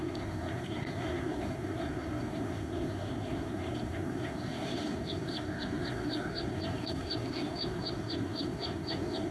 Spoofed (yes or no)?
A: yes